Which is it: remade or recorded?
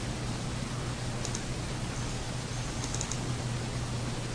recorded